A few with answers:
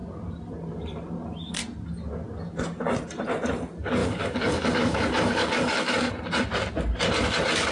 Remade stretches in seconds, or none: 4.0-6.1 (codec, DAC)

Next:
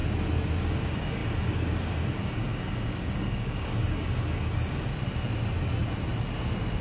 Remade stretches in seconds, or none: 0.6-4.9 (codec, DAC)

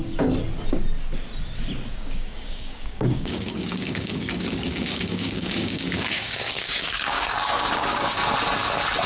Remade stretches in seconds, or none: 1.9-8.2 (codec, DAC)

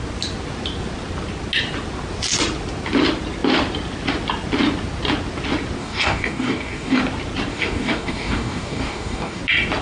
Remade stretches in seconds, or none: 5.8-7.0 (codec, DAC); 7.5-9.4

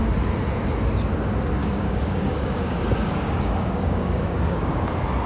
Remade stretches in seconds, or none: 1.6-4.8 (codec, DAC)

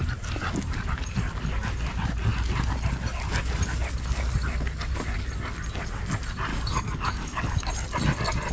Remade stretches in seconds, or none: 6.5-7.7 (codec, DAC)